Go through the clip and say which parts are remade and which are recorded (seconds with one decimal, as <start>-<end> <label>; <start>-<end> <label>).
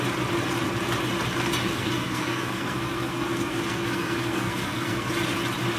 0.0-1.6 recorded; 1.6-5.1 remade; 5.1-5.8 recorded